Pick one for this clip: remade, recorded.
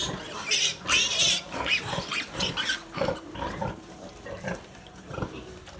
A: remade